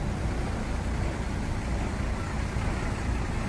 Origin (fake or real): real